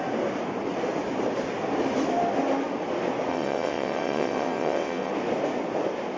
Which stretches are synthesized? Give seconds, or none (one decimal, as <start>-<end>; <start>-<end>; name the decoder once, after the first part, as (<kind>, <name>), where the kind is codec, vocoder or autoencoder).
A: 3.3-5.1 (vocoder, WaveNeXt)